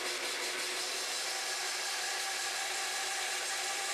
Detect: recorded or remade recorded